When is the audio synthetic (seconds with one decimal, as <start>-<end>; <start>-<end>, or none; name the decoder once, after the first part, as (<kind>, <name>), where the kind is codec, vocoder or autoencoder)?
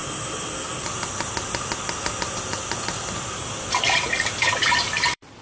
3.2-5.4 (vocoder, BigVGAN v2)